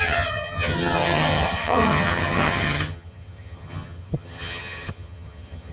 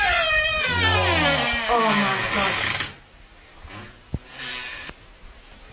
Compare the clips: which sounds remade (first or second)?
first